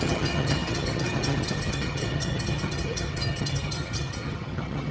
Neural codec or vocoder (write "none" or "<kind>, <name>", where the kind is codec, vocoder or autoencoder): vocoder, HiFi-GAN